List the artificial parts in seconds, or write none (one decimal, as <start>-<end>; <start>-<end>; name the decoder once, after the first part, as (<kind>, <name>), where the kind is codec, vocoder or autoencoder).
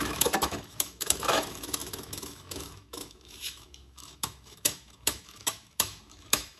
0.0-6.6 (autoencoder, DAC-VAE)